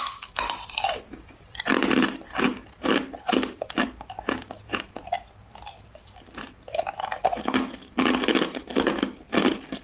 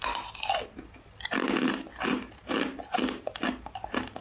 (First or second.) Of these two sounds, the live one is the second